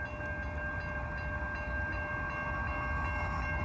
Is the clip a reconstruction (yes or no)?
no